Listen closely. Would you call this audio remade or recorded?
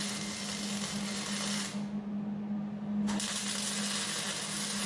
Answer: recorded